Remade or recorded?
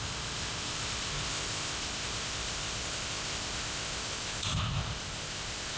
remade